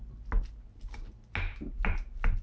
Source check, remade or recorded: recorded